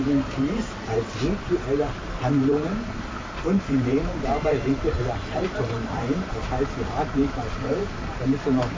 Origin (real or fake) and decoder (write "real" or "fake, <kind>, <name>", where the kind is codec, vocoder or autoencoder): fake, vocoder, BigVGAN v2